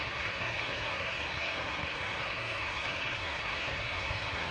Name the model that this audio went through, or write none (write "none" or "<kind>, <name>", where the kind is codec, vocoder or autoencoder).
codec, SNAC